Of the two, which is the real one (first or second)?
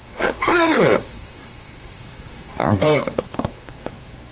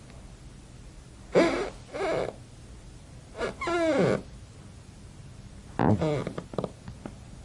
second